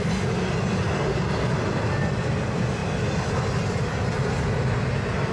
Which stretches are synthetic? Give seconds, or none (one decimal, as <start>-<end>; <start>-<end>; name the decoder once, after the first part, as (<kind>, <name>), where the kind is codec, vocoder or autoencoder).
none